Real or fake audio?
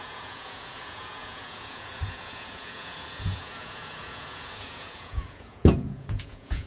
fake